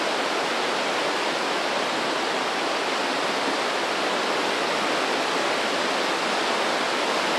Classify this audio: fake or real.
real